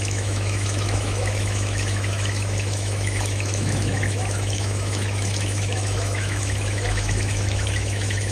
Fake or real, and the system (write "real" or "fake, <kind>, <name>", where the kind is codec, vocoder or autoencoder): fake, autoencoder, DAC-VAE